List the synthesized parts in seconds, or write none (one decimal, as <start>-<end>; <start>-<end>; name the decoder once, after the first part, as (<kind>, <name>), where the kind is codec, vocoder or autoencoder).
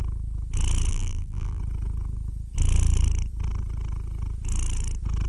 0.9-1.6 (vocoder, BigVGAN v2)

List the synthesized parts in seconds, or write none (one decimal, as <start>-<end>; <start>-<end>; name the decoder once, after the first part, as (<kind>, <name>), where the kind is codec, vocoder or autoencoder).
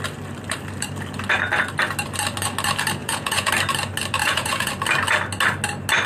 3.0-3.5 (vocoder, Vocos); 4.2-4.7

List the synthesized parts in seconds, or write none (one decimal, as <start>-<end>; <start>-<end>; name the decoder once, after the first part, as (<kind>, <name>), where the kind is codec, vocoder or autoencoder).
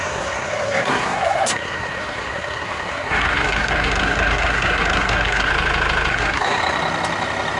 0.0-5.5 (codec, SNAC); 6.1-6.6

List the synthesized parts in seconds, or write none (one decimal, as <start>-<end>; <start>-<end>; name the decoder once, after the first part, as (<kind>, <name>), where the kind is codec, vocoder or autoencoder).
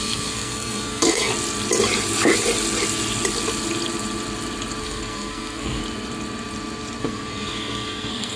0.0-1.3 (codec, SNAC); 4.8-5.8; 7.0-8.4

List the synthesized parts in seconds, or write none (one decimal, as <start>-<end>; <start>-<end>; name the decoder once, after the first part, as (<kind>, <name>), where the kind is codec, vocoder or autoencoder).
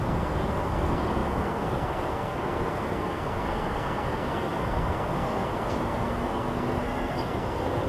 0.0-7.9 (codec, SNAC)